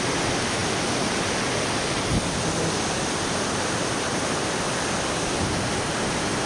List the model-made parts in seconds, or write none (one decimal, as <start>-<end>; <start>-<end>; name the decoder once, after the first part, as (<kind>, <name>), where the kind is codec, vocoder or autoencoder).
none

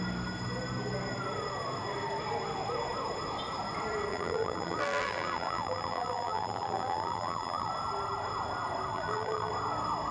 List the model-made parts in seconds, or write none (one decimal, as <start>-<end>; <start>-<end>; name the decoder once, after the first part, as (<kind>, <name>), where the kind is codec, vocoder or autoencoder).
4.1-7.7 (vocoder, BigVGAN v2); 8.9-9.5

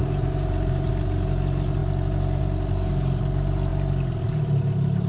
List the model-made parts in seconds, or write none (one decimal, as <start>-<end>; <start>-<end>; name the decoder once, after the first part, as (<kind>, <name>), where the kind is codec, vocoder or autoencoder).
0.0-0.9 (vocoder, BigVGAN v2)